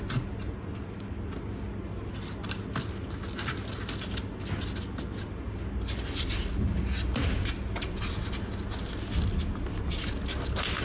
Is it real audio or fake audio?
real